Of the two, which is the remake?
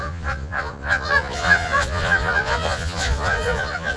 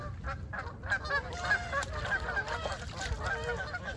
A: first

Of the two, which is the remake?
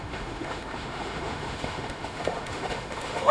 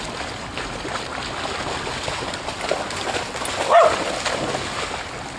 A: first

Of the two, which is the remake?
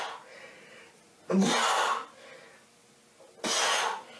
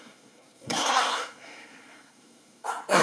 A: second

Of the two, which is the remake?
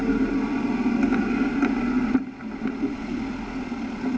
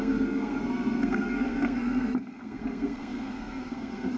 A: second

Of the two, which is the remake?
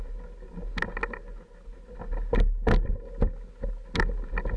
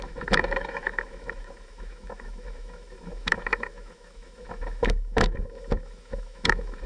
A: second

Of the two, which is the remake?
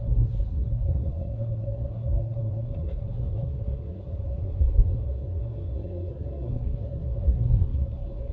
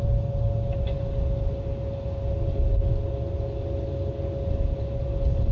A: first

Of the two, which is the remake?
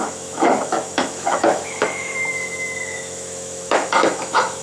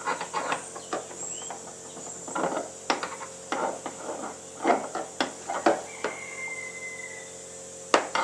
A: first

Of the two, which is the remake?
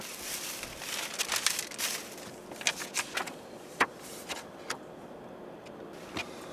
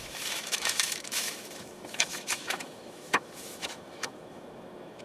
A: second